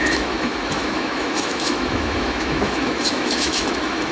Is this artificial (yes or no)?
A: yes